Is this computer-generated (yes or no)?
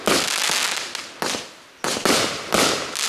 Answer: no